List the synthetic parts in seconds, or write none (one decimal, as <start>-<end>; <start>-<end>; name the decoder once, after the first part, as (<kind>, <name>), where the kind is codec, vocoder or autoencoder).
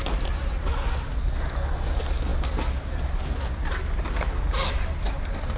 none